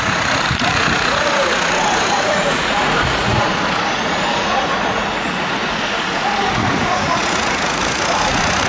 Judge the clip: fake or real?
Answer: fake